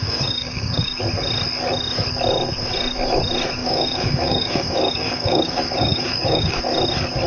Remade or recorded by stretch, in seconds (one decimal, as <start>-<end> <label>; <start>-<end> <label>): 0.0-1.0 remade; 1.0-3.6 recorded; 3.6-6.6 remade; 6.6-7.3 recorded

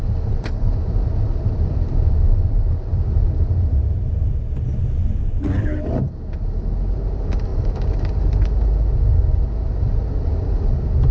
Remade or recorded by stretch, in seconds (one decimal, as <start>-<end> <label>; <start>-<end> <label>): 0.0-11.1 recorded

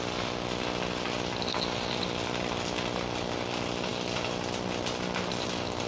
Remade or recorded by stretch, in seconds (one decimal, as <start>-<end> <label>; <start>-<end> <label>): 0.0-5.9 recorded

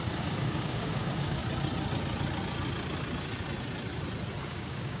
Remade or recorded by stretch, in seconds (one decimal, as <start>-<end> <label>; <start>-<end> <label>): 0.0-1.4 remade; 1.4-4.4 recorded; 4.4-5.0 remade

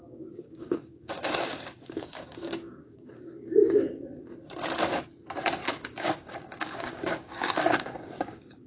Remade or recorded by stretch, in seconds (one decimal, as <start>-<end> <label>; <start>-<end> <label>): 0.0-4.0 remade; 4.0-5.7 recorded; 5.7-8.7 remade

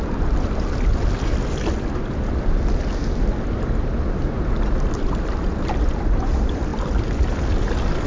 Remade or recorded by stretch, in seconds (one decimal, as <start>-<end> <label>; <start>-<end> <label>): 0.0-8.1 recorded

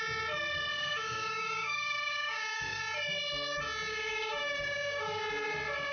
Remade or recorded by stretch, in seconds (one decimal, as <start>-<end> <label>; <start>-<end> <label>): 0.0-0.7 recorded; 0.7-2.8 remade; 2.8-3.9 recorded; 3.9-5.2 remade; 5.2-5.9 recorded

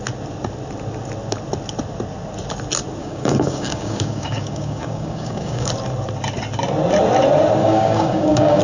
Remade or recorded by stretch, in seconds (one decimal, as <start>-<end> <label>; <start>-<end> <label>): 0.0-3.0 recorded; 3.0-5.7 remade; 5.7-7.6 recorded; 7.6-8.6 remade